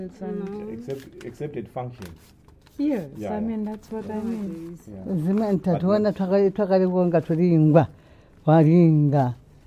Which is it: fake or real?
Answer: real